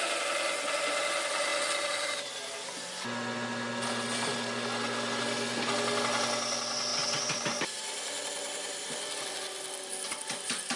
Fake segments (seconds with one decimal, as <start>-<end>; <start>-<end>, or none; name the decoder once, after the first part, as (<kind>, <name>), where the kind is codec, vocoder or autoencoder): none